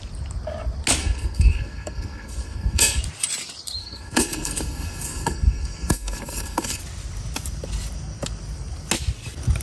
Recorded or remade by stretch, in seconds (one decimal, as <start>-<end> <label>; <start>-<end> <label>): 0.0-1.0 recorded; 1.0-3.0 remade; 3.0-3.8 recorded; 3.8-6.8 remade; 6.8-9.6 recorded